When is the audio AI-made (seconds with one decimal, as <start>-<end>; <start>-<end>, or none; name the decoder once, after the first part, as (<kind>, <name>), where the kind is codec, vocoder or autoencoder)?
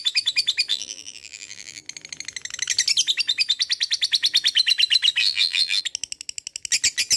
0.7-1.8 (vocoder, BigVGAN v2); 5.2-5.8